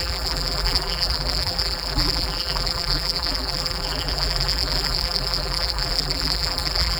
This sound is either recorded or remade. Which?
remade